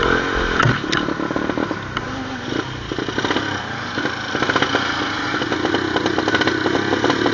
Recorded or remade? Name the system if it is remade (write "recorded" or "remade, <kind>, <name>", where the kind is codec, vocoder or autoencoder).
recorded